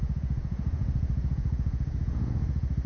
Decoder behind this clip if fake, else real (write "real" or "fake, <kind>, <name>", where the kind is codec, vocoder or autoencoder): fake, vocoder, Vocos